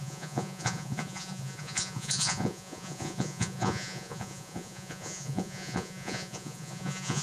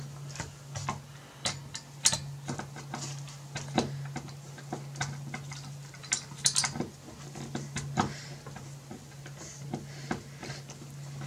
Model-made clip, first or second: first